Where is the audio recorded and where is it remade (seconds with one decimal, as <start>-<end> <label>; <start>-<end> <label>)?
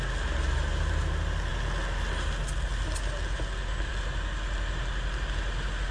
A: 0.0-5.9 recorded